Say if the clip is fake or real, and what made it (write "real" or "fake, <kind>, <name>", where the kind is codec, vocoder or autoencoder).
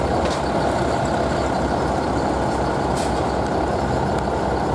real